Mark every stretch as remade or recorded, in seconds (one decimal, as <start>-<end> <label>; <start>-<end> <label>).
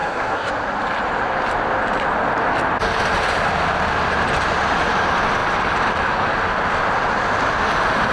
0.0-0.5 remade; 0.5-8.1 recorded